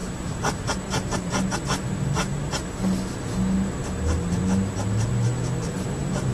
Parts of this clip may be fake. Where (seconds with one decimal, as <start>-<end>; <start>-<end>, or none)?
0.0-0.6; 5.1-6.3